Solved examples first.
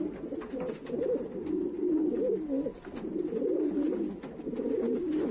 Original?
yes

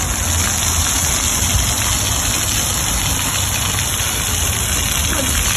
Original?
yes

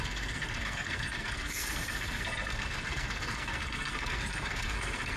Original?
no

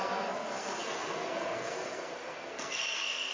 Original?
no